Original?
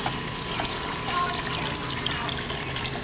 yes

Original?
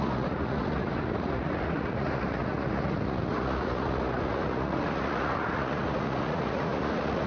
no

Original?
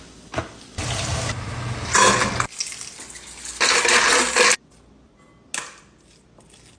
yes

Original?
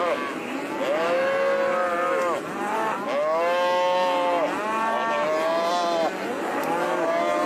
yes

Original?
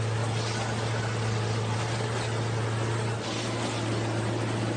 yes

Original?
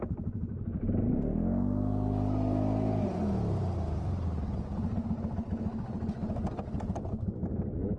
yes